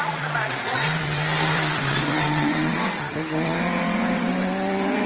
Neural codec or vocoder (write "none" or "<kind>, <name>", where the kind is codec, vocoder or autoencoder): vocoder, WaveNeXt